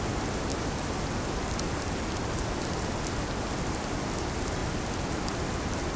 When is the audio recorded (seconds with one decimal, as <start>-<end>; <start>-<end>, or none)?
0.0-6.0